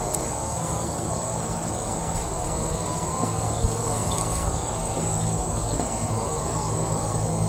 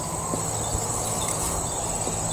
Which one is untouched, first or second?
second